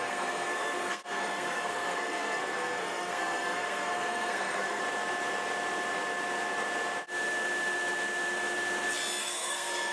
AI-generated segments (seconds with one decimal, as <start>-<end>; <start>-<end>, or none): 0.0-4.8; 9.2-9.9